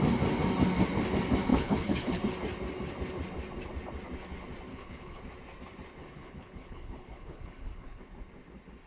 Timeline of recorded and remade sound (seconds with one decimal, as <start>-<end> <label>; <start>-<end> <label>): 0.0-1.5 recorded; 1.5-2.2 remade; 2.2-4.7 recorded; 4.7-5.2 remade; 5.2-6.0 recorded; 6.0-8.0 remade; 8.0-8.9 recorded